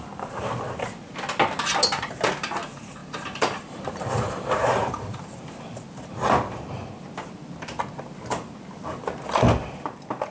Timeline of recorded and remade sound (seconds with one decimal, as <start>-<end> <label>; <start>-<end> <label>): 0.0-3.0 recorded; 3.0-4.3 remade; 4.3-4.8 recorded; 4.8-5.4 remade; 5.4-10.3 recorded